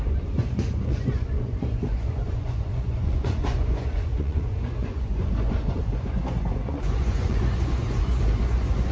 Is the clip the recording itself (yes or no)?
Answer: no